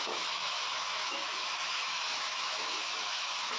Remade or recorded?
remade